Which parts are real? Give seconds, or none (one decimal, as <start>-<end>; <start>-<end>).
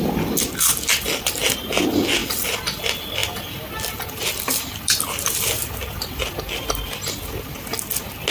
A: 0.0-2.2; 2.8-3.2; 6.4-8.3